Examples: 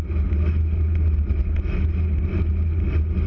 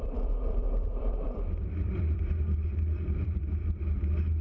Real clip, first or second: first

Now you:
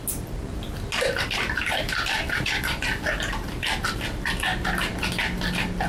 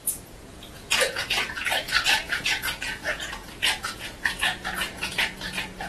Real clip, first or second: first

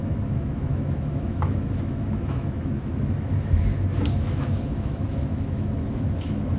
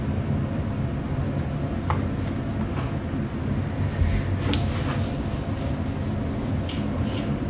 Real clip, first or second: second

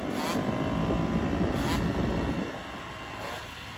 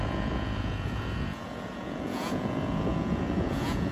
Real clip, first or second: first